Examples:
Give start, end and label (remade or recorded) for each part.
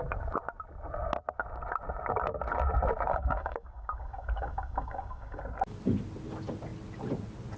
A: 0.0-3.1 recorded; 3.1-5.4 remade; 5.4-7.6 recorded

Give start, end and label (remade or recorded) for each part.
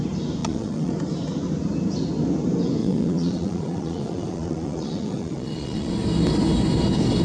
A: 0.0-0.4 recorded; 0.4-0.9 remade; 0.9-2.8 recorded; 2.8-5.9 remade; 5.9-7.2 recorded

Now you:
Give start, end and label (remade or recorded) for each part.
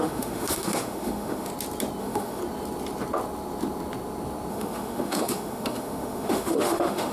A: 0.0-1.5 remade; 1.5-2.0 recorded; 2.0-2.4 remade; 2.4-4.5 recorded; 4.5-7.1 remade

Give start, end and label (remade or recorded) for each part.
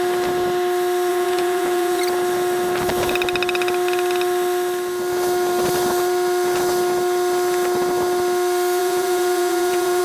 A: 0.0-1.1 recorded; 1.1-2.0 remade; 2.0-8.8 recorded; 8.8-10.0 remade